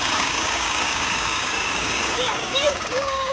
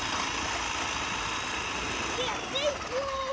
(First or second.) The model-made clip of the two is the first